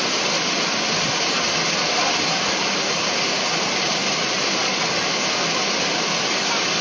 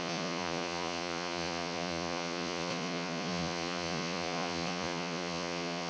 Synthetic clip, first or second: second